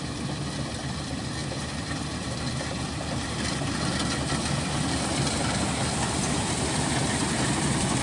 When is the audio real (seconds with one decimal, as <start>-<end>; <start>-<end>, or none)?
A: 0.0-8.0